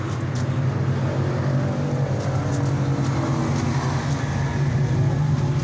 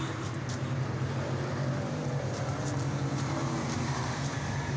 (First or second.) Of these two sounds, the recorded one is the first